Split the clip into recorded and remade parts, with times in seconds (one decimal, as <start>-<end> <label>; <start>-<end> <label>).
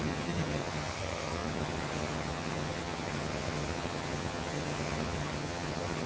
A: 0.0-6.1 remade